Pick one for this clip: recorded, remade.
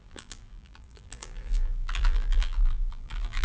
remade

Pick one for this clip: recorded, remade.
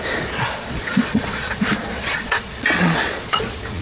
remade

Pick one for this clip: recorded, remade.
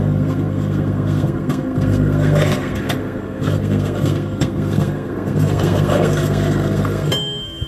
remade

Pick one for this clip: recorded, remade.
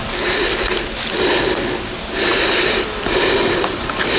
recorded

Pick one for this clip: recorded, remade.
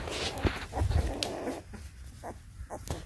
recorded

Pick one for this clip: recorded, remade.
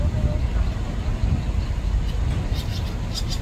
recorded